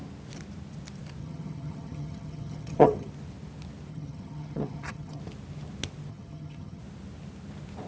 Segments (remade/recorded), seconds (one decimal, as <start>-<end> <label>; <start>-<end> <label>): 0.0-1.2 recorded; 1.2-3.1 remade; 3.1-3.9 recorded; 3.9-5.2 remade; 5.2-6.1 recorded; 6.1-6.8 remade; 6.8-7.9 recorded